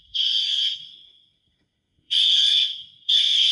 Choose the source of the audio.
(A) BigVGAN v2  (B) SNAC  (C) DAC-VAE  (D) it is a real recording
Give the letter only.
B